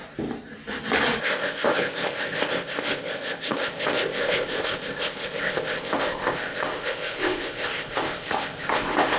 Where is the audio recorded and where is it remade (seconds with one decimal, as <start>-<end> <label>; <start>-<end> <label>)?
0.0-1.2 recorded; 1.2-9.2 remade